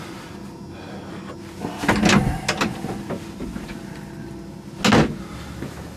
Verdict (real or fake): real